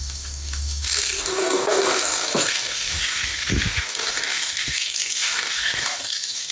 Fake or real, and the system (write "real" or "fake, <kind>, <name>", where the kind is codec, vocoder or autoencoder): fake, codec, DAC